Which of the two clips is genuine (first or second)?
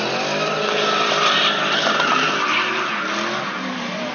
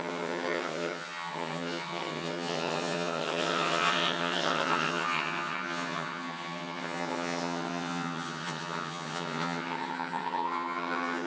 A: first